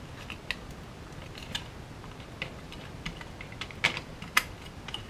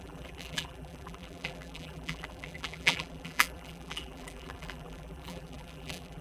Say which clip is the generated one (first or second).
second